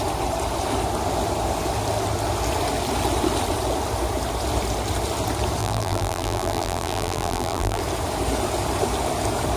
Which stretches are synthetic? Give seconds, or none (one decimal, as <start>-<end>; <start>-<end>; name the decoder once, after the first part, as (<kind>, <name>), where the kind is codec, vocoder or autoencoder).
5.6-7.8 (vocoder, BigVGAN v2)

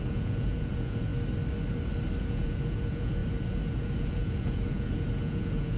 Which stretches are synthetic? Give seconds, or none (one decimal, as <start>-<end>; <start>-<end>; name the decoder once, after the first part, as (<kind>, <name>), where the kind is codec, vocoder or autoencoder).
0.0-1.1 (vocoder, Vocos); 2.2-5.8

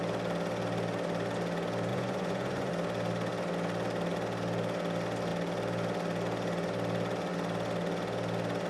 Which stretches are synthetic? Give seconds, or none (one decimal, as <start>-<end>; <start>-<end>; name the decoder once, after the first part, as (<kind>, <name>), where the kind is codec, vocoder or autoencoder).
1.9-2.7 (vocoder, Vocos)